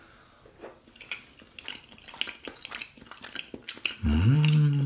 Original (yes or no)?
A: yes